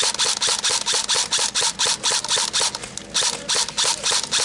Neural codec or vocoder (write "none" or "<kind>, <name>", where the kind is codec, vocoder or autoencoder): none